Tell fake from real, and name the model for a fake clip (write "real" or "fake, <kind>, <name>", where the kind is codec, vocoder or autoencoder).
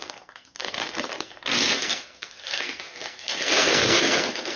fake, codec, SNAC